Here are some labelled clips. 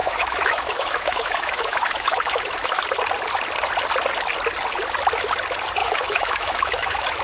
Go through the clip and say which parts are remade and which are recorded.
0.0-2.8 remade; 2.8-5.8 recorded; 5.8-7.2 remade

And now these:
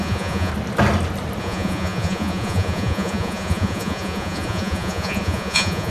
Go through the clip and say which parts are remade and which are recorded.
0.0-0.5 remade; 0.5-1.4 recorded; 1.4-5.9 remade